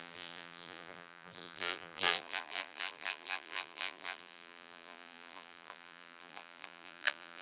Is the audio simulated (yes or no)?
yes